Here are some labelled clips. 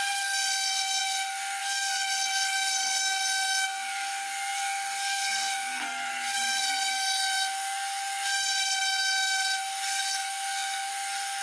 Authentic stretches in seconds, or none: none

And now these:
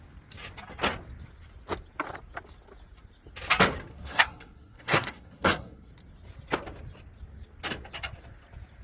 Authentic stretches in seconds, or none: 0.0-3.9; 5.9-8.8

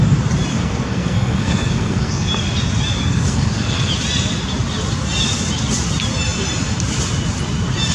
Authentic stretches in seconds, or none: 0.0-0.5; 2.3-3.0; 3.9-7.9

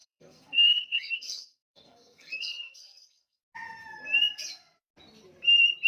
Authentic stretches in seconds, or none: 3.4-5.9

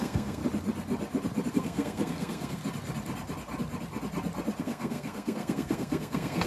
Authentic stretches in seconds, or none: 0.4-1.5; 2.6-4.6

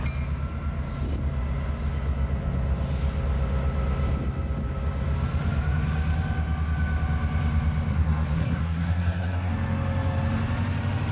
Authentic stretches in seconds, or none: 0.0-7.9; 9.5-11.1